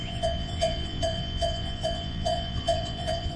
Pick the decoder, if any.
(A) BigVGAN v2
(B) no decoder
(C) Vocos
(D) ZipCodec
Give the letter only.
C